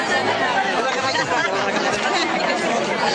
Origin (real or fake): real